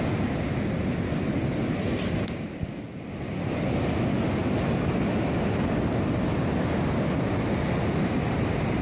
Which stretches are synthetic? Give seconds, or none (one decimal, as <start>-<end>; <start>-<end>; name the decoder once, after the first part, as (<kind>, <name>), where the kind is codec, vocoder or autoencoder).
none